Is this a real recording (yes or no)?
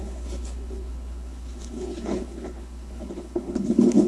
no